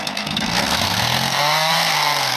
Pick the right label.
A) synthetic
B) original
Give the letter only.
A